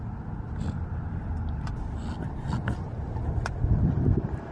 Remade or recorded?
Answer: recorded